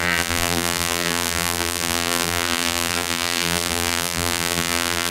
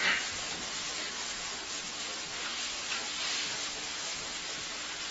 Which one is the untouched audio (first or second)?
second